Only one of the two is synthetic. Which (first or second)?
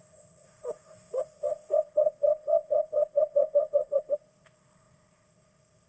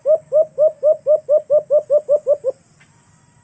first